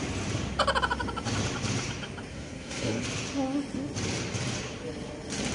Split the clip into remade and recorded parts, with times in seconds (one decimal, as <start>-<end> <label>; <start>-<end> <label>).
0.0-2.3 recorded; 2.3-3.0 remade; 3.0-5.5 recorded